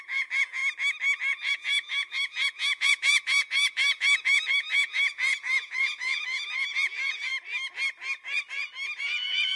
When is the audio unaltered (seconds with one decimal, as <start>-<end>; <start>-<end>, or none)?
0.6-1.2; 7.3-9.0